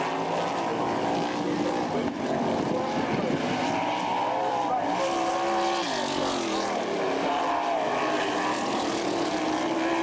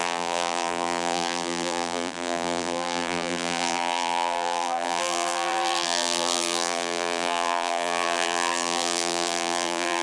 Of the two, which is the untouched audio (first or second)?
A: first